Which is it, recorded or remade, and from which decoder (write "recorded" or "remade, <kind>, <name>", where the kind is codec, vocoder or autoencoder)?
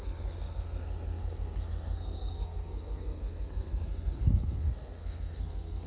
remade, codec, SNAC